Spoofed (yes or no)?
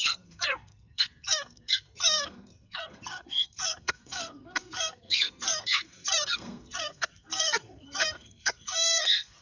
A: yes